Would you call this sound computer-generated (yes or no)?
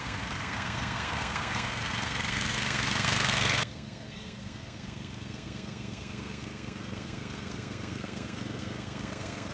yes